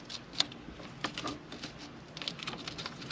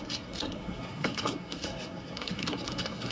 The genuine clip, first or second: first